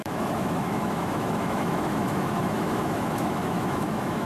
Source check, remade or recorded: remade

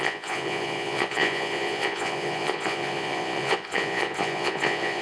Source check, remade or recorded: remade